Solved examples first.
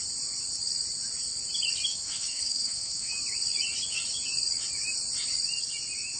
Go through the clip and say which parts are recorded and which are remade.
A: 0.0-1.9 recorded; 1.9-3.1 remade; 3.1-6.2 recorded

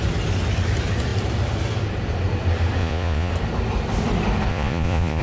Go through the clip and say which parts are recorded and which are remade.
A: 0.0-2.8 recorded; 2.8-3.3 remade; 3.3-4.5 recorded; 4.5-5.2 remade

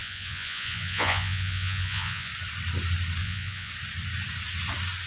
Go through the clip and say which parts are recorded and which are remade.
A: 0.0-2.3 remade; 2.3-3.2 recorded; 3.2-3.7 remade; 3.7-5.1 recorded